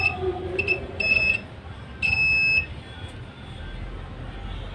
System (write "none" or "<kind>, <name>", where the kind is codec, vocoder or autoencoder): none